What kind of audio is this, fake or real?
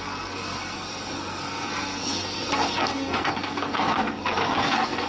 fake